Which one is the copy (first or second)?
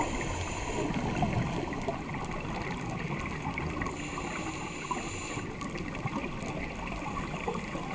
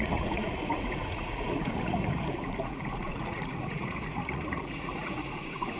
second